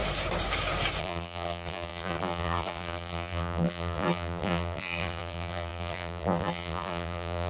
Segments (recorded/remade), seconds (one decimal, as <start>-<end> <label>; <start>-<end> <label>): 0.0-1.0 recorded; 1.0-7.5 remade